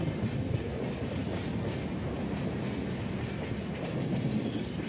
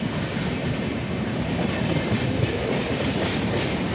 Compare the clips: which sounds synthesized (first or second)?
second